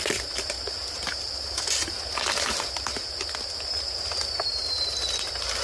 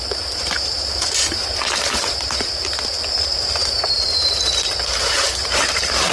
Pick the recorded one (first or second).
first